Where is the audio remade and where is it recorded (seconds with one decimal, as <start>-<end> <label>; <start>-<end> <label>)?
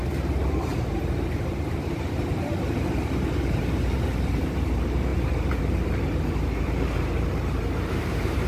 0.0-8.5 remade